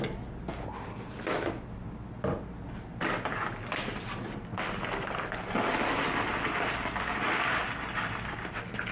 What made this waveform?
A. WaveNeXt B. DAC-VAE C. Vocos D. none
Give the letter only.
D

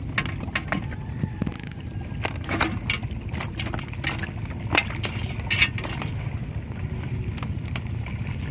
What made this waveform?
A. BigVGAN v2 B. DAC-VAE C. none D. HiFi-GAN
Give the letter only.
C